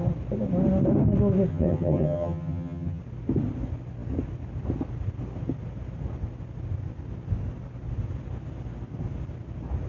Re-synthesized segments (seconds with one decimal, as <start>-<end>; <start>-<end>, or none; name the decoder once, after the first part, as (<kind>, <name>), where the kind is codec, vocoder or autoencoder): 1.5-3.0 (vocoder, HiFi-GAN)

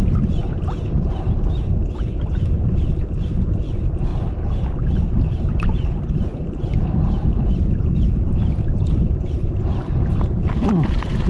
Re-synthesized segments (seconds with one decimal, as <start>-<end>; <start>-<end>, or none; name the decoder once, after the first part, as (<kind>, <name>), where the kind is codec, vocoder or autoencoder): 1.8-2.6 (vocoder, BigVGAN v2); 6.7-10.5